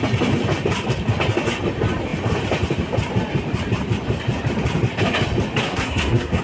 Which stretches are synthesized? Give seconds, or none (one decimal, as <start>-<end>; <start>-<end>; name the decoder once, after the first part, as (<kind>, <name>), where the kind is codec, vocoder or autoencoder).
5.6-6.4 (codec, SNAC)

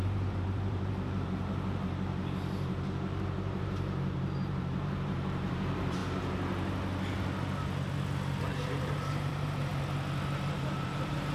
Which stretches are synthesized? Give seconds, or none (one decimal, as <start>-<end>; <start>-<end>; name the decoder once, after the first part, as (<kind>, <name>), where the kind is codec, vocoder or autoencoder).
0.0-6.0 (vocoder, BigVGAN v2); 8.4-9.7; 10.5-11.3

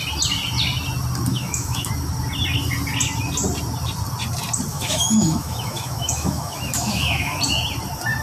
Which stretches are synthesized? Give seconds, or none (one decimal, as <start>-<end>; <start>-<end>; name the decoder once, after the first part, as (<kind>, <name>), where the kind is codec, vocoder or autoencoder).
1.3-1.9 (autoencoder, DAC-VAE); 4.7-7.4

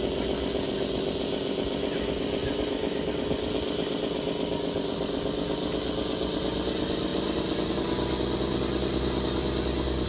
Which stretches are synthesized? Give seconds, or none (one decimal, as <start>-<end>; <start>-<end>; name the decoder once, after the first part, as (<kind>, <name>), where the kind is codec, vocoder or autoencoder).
2.4-3.1 (vocoder, BigVGAN v2); 7.1-7.7

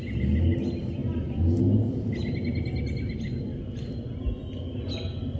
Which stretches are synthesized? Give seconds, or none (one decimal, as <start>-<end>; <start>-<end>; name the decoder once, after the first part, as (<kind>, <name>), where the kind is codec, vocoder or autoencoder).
none